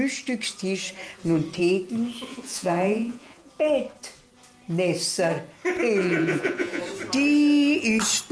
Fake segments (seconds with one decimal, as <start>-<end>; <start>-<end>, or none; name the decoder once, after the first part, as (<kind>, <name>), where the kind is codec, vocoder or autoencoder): 2.3-3.5 (vocoder, Vocos); 6.0-6.8